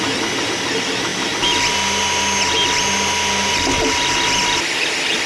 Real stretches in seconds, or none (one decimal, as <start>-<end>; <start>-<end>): 0.0-5.3